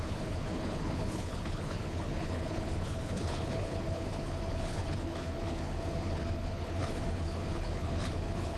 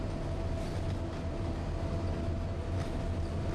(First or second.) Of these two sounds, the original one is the second